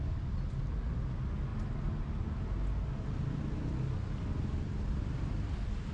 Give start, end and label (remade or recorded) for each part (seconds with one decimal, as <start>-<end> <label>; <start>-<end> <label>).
0.0-5.9 recorded